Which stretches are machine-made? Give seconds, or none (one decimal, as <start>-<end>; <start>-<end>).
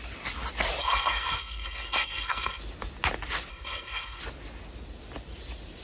0.8-2.6; 3.5-4.2